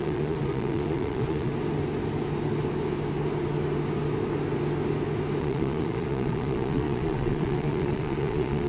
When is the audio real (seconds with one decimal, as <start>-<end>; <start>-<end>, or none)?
1.5-5.4